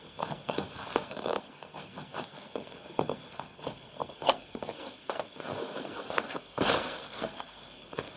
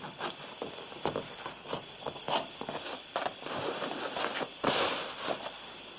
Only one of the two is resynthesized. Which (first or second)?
first